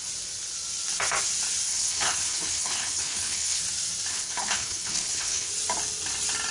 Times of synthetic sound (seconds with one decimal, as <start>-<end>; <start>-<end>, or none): 1.7-3.6; 4.1-5.5